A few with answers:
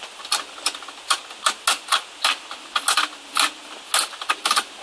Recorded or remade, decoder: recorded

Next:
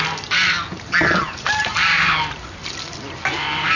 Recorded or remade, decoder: remade, vocoder, BigVGAN v2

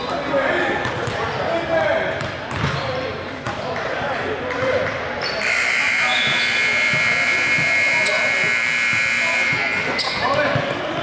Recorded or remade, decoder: remade, vocoder, BigVGAN v2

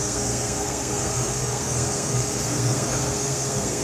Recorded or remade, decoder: remade, codec, SNAC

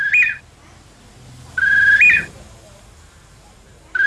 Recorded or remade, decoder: recorded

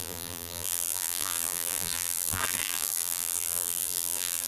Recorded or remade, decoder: remade, vocoder, BigVGAN v2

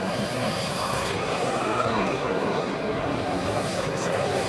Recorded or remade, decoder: remade, codec, SNAC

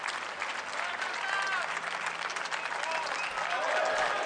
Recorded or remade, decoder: recorded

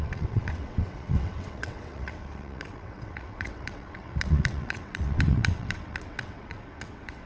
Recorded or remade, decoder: remade, vocoder, WaveNeXt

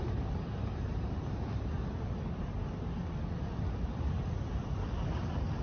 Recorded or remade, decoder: recorded